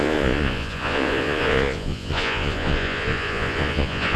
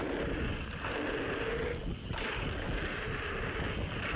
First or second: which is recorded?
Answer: second